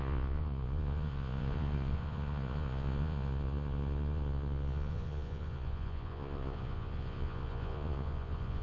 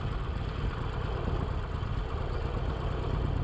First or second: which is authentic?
second